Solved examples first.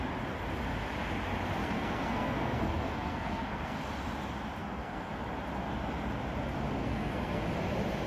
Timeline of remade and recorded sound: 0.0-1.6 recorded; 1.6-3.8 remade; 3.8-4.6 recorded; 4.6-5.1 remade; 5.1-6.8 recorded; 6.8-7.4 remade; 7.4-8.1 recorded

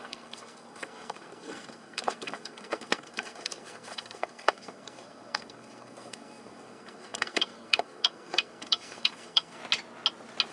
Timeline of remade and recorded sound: 0.0-9.6 remade; 9.6-10.5 recorded

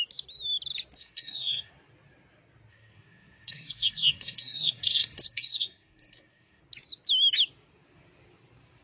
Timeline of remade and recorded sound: 0.0-1.0 recorded; 1.0-1.7 remade; 1.7-2.7 recorded; 2.7-6.6 remade; 6.6-8.8 recorded

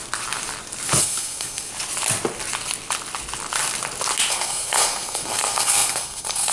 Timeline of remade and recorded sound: 0.0-1.0 recorded; 1.0-1.7 remade; 1.7-4.3 recorded; 4.3-6.5 remade